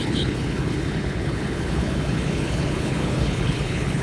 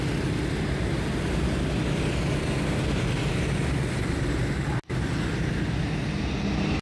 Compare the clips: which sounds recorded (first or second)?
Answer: second